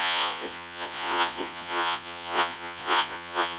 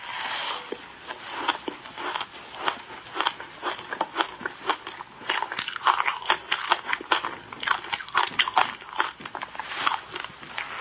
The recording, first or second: second